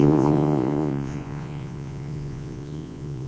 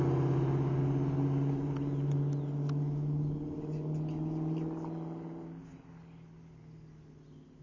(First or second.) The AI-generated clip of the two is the first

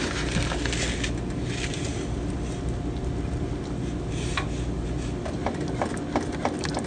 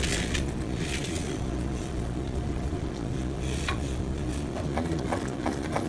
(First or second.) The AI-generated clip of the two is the second